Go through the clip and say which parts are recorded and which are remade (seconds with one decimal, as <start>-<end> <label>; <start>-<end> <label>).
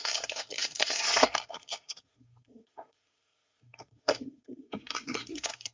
0.0-5.7 remade